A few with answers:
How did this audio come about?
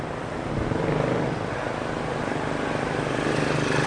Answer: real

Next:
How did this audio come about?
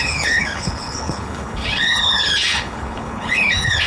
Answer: fake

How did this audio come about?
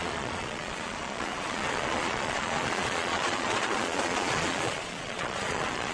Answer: fake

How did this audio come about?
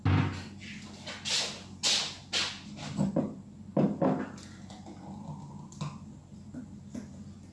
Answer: real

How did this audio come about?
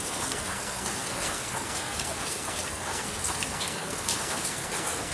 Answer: fake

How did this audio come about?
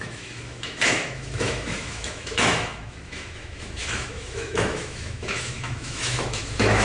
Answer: fake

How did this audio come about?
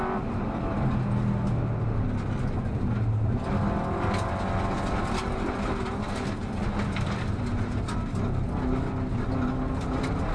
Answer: real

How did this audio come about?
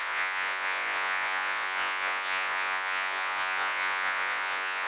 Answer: fake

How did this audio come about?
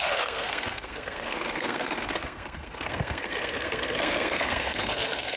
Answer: fake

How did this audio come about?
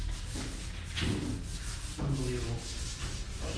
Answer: real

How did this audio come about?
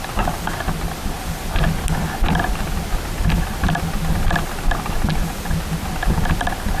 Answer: real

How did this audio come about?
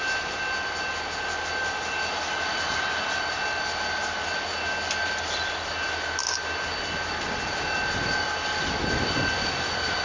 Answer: real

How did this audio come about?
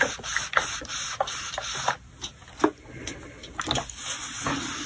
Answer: real